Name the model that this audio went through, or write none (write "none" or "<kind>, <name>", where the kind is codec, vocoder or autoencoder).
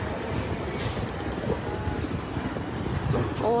none